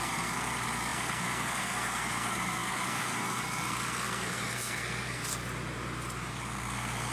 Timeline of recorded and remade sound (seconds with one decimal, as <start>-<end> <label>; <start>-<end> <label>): 0.0-5.4 remade; 5.4-6.3 recorded; 6.3-7.1 remade